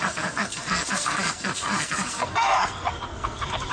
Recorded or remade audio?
remade